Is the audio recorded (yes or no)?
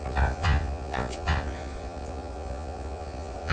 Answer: no